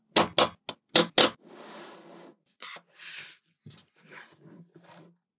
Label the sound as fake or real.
real